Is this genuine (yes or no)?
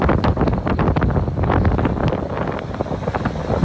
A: yes